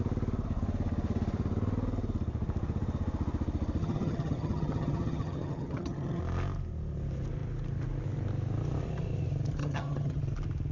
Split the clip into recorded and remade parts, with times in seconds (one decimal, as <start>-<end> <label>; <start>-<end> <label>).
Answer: 0.0-3.8 recorded; 3.8-6.2 remade; 6.2-9.6 recorded; 9.6-10.2 remade; 10.2-10.7 recorded